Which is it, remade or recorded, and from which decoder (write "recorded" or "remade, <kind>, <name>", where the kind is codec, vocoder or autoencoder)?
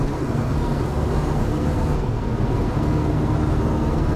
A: remade, codec, SNAC